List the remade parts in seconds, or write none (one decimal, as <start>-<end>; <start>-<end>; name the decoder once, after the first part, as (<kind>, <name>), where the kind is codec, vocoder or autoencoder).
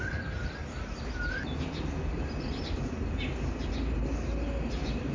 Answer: none